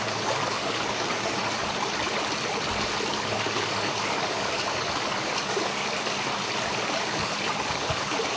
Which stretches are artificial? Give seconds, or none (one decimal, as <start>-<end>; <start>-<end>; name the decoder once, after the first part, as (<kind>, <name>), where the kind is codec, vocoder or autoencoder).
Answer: 0.0-1.6 (codec, DAC); 3.1-5.8; 6.6-8.4